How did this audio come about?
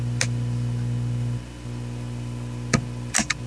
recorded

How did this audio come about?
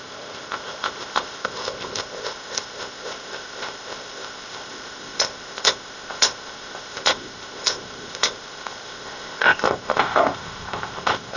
remade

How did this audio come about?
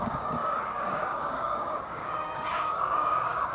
remade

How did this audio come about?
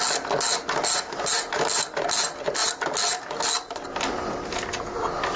recorded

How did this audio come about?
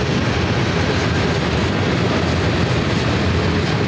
recorded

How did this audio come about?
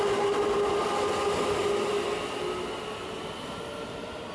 recorded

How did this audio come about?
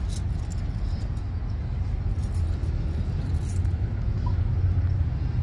recorded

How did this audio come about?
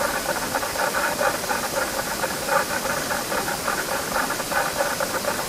recorded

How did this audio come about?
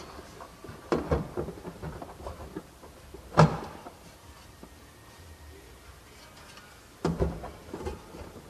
remade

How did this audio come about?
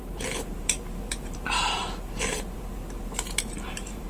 remade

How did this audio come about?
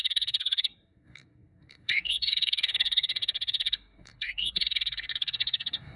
remade